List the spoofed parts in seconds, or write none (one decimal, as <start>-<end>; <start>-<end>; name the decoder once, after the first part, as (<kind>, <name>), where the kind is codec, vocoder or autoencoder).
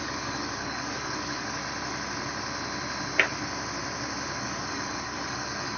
0.0-1.6 (codec, DAC); 4.4-5.8